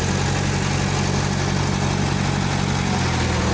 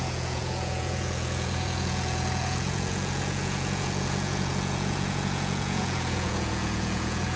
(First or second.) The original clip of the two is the first